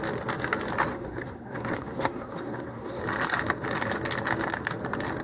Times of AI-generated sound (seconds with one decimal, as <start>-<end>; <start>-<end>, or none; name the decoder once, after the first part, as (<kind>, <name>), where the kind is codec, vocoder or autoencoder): 0.9-3.0 (codec, SNAC)